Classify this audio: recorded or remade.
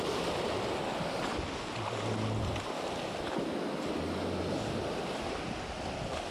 recorded